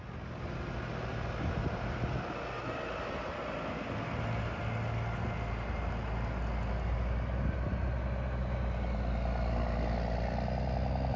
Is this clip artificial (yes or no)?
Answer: no